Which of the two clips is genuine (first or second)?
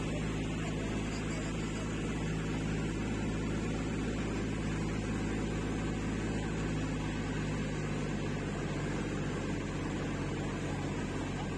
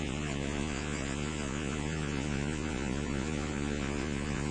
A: first